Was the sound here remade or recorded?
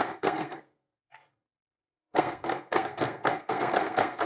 remade